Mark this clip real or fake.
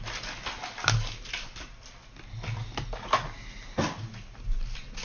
real